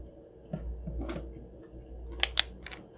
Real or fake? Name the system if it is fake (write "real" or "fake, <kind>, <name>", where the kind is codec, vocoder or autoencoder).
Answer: real